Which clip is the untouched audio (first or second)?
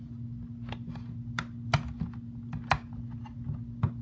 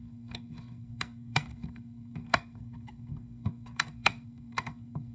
first